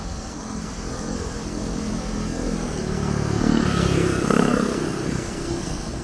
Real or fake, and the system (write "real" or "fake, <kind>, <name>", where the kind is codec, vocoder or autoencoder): fake, codec, SNAC